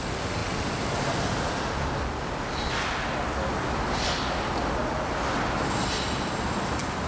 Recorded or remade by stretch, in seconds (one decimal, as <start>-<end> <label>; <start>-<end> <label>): 0.0-7.1 recorded